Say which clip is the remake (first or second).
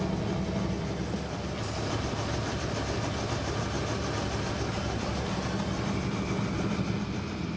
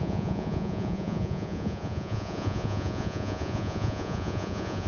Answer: second